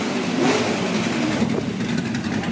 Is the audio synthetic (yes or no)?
yes